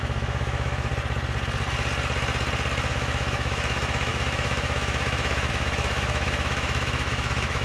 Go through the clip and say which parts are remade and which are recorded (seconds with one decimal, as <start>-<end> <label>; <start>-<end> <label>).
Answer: 0.0-0.9 remade; 0.9-2.9 recorded; 2.9-7.6 remade